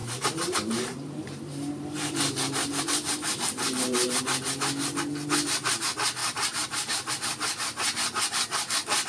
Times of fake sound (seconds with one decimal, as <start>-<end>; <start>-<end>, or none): 0.0-4.2; 6.2-7.1